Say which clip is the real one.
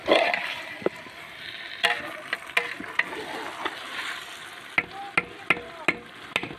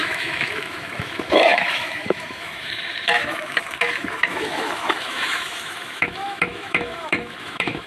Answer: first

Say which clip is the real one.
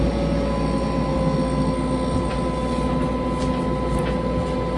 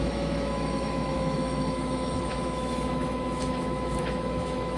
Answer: first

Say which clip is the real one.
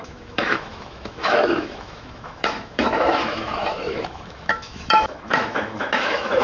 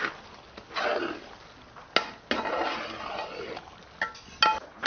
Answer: second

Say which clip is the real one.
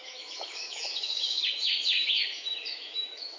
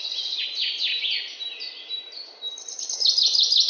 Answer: second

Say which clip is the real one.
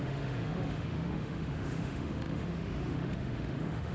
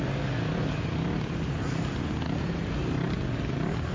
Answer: second